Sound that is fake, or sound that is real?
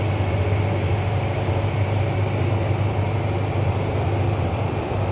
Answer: fake